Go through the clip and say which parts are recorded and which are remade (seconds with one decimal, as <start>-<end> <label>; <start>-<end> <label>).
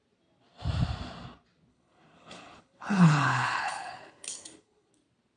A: 0.0-1.7 recorded; 1.7-4.9 remade; 4.9-5.4 recorded